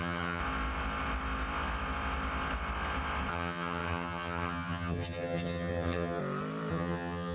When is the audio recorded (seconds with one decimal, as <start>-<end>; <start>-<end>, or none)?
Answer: 0.4-3.3; 6.2-6.7